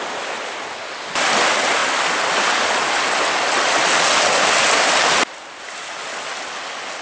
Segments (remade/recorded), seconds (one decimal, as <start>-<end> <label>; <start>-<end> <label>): 0.0-7.0 recorded